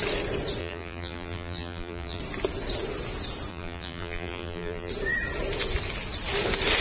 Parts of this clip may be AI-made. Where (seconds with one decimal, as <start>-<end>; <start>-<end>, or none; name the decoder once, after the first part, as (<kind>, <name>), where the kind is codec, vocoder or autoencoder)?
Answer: 0.6-2.2 (vocoder, BigVGAN v2); 3.5-4.9